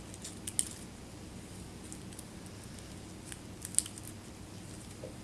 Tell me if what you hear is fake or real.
real